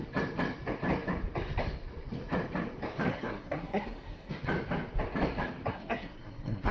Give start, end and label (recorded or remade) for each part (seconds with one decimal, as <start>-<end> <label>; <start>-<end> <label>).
0.0-3.1 recorded; 3.1-4.3 remade; 4.3-5.7 recorded; 5.7-6.7 remade